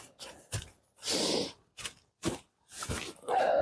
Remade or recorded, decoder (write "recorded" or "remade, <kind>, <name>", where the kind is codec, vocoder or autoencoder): recorded